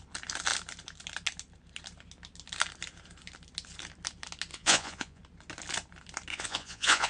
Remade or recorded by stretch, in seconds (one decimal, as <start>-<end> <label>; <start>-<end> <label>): 0.0-4.5 recorded; 4.5-5.2 remade; 5.2-6.3 recorded; 6.3-7.1 remade